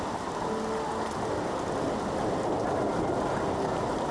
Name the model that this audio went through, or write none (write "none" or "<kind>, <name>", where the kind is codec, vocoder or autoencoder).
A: none